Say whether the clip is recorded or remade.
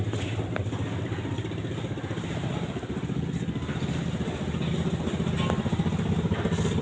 recorded